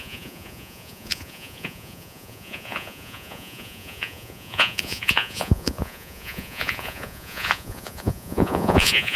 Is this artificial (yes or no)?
yes